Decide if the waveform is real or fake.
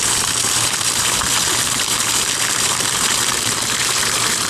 fake